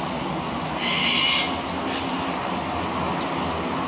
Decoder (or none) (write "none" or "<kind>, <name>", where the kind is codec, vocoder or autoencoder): none